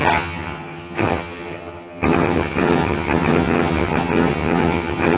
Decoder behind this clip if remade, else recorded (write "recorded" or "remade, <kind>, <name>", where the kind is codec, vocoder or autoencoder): remade, vocoder, HiFi-GAN